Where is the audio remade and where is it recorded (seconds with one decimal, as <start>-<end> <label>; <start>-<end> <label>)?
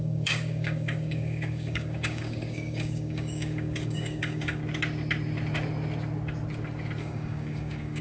0.0-4.6 remade; 4.6-7.0 recorded; 7.0-8.0 remade